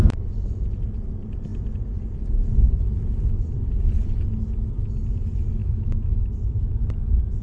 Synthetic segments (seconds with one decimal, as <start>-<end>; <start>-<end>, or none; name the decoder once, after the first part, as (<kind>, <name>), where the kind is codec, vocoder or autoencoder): 5.6-6.2 (autoencoder, DAC-VAE)